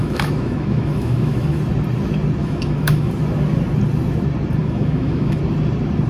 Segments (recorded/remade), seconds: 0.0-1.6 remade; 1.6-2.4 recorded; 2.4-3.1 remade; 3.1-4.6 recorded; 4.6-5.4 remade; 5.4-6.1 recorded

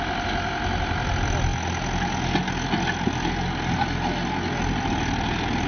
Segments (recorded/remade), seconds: 0.0-5.7 recorded

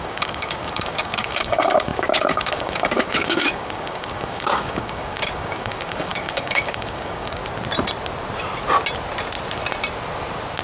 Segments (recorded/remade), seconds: 0.0-7.4 remade; 7.4-10.6 recorded

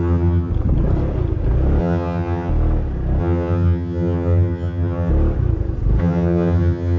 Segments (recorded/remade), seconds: 0.0-0.5 remade; 0.5-1.8 recorded; 1.8-2.5 remade; 2.5-3.2 recorded; 3.2-5.1 remade; 5.1-6.0 recorded; 6.0-7.0 remade

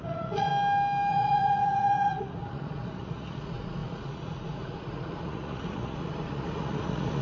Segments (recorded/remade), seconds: 0.0-0.5 remade; 0.5-1.1 recorded; 1.1-7.2 remade

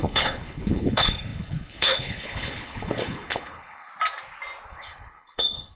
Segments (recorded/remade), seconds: 0.0-3.9 remade; 3.9-4.7 recorded; 4.7-5.8 remade

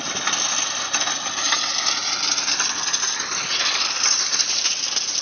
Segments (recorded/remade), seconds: 0.0-5.2 recorded